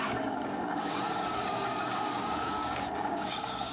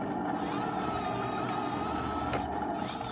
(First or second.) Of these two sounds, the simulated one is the first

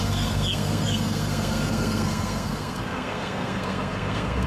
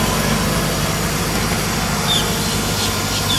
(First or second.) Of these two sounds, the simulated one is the first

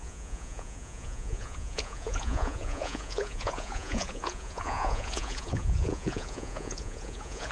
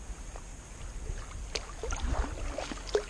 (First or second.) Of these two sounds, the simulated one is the first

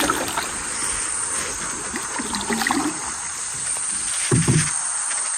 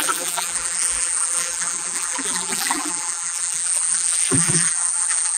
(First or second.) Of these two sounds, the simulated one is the second